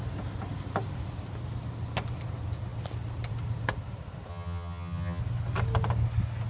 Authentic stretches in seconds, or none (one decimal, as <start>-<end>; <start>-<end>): 0.0-4.3; 5.2-6.5